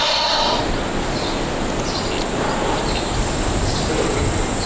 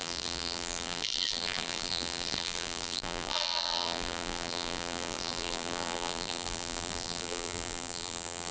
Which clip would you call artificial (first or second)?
second